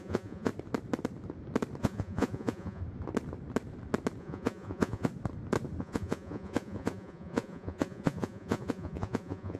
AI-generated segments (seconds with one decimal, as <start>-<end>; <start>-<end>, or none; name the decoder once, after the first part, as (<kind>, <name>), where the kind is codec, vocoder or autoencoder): 0.0-0.5 (vocoder, Vocos); 1.8-2.8; 4.2-5.1; 5.8-9.6